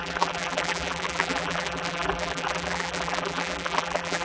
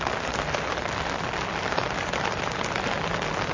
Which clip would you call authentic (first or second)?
second